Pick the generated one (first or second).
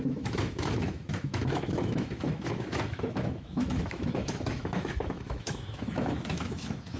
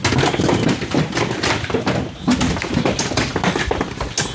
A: first